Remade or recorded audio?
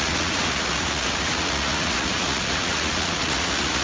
remade